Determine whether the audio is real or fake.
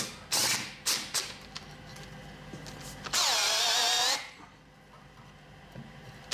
real